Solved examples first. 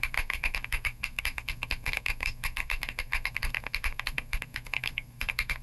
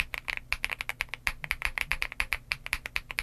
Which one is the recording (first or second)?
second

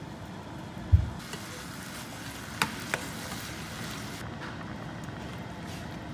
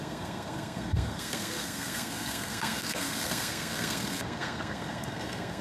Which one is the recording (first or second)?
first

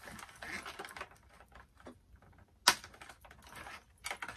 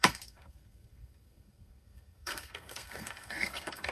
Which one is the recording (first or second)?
first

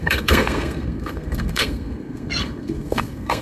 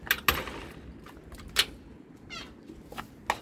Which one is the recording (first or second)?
second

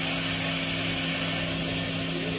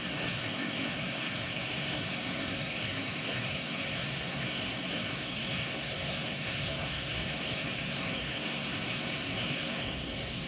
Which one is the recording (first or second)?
first